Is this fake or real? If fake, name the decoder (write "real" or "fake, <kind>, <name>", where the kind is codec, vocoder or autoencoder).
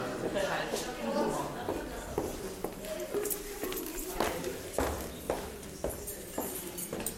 real